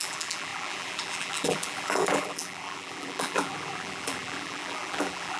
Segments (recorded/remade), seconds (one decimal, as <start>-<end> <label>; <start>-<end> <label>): 0.0-5.4 remade